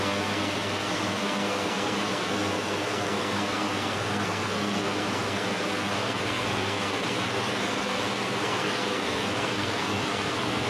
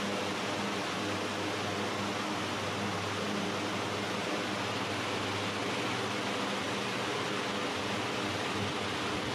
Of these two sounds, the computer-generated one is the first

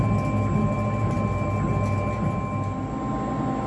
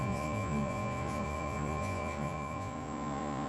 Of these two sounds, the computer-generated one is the second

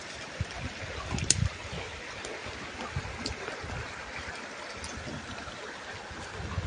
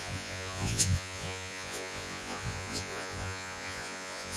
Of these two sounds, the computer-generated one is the second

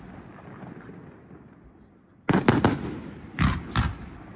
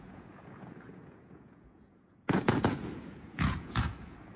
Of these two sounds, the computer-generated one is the second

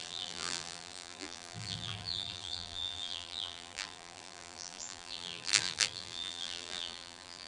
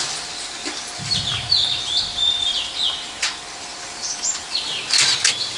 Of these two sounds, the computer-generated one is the first